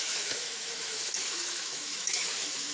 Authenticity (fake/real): fake